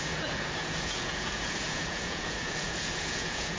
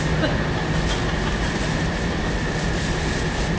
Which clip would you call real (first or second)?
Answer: second